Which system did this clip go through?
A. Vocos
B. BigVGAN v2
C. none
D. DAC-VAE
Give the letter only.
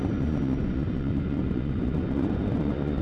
A